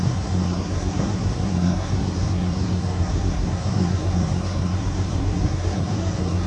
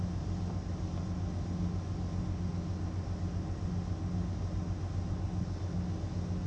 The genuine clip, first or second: second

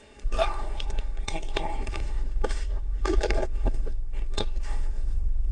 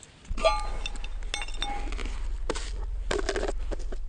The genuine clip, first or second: second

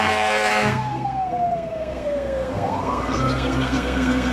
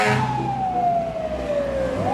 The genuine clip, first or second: second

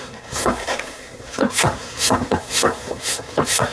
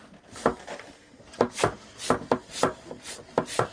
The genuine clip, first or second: second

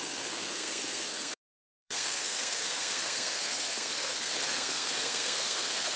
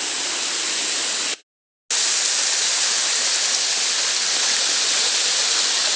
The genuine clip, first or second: second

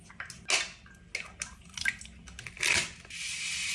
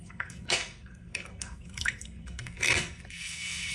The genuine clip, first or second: first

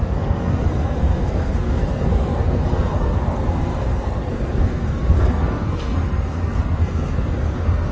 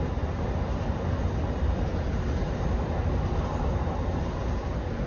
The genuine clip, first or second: second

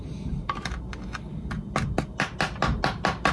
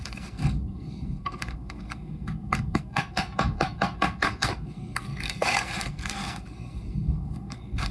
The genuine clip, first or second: first